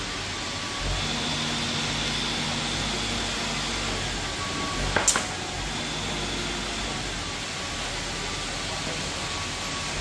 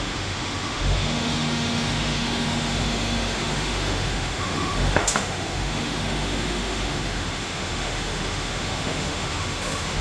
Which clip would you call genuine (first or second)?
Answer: first